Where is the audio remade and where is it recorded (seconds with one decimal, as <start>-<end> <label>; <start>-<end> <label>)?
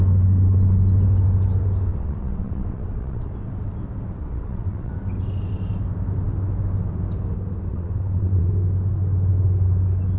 0.0-1.9 recorded; 1.9-3.3 remade; 3.3-4.2 recorded; 4.2-4.9 remade; 4.9-7.7 recorded; 7.7-8.5 remade; 8.5-10.2 recorded